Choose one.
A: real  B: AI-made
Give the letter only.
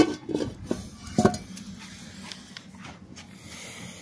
A